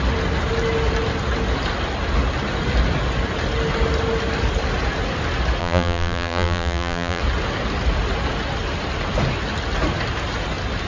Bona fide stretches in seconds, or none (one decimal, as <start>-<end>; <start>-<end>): 0.0-5.6; 7.2-10.9